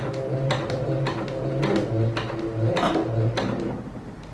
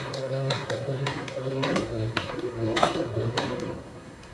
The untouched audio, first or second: first